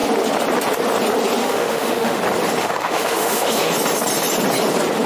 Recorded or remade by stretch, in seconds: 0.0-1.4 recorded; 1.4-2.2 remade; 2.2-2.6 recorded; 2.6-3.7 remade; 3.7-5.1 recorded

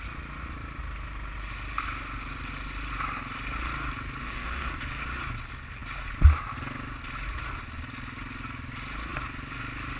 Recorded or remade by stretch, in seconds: 0.0-4.2 recorded; 4.2-4.7 remade; 4.7-10.0 recorded

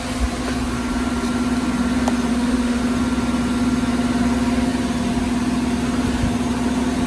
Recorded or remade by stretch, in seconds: 0.0-2.3 recorded; 2.3-2.8 remade; 2.8-7.1 recorded

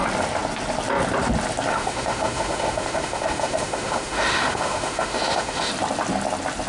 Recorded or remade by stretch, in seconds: 0.0-1.7 recorded; 1.7-5.7 remade; 5.7-6.7 recorded